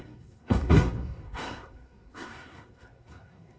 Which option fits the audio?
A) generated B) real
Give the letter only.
A